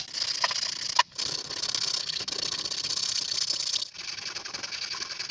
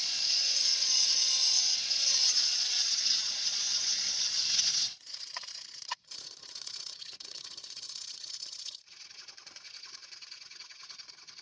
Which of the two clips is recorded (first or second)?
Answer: first